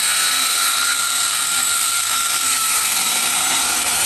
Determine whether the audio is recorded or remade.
remade